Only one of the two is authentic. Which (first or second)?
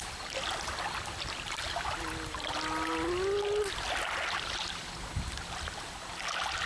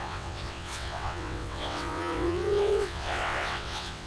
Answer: first